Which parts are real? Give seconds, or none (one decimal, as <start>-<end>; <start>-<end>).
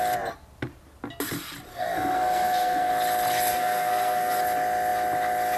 0.0-1.7; 2.9-3.5; 4.4-5.6